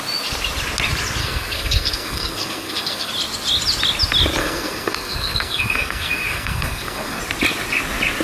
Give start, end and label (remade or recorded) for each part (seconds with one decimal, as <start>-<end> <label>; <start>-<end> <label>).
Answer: 0.0-1.2 recorded; 1.2-3.1 remade; 3.1-4.4 recorded; 4.4-7.2 remade; 7.2-8.2 recorded